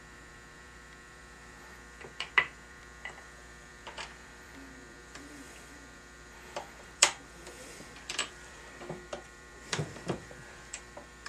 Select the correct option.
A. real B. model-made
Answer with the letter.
B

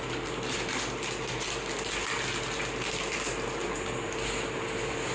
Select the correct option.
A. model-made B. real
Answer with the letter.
B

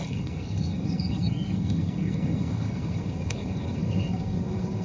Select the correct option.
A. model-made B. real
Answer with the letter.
A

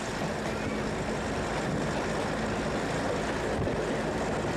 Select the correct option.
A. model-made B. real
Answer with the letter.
B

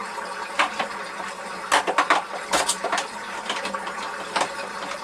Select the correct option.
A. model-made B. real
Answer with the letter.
B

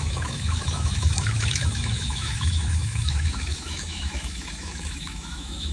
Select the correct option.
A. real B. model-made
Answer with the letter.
B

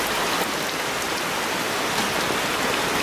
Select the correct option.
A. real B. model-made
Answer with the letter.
A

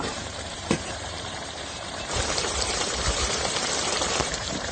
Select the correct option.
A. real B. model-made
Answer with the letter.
B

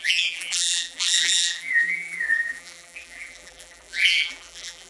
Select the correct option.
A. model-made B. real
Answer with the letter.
A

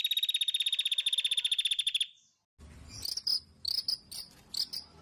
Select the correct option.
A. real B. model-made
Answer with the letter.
A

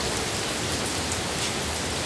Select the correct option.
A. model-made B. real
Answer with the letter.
B